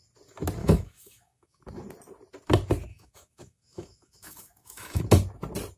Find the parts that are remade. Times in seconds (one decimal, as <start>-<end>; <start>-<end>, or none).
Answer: 0.6-1.6; 2.9-5.0